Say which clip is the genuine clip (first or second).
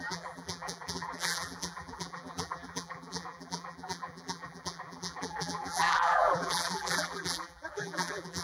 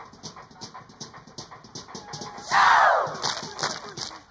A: second